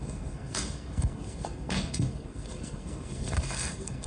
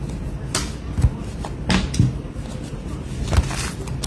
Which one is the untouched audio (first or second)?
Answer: second